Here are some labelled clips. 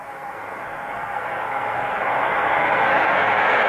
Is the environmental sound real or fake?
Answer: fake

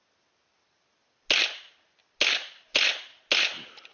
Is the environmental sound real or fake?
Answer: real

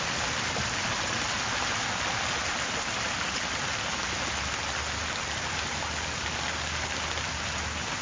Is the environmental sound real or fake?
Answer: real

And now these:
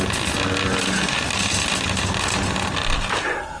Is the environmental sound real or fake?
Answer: real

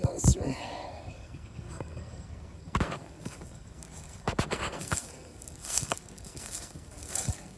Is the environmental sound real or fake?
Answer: fake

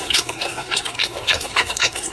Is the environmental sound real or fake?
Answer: fake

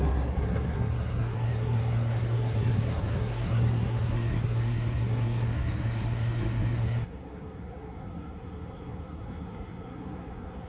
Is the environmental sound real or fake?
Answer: fake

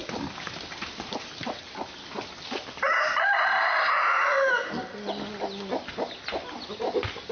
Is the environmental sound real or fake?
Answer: real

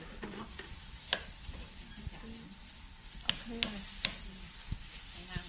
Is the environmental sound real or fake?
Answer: real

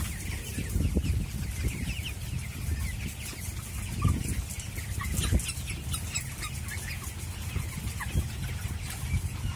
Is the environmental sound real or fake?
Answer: real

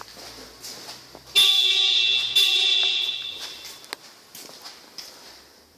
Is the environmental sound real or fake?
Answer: real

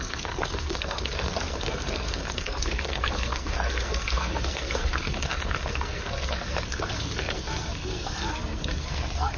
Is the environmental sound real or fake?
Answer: fake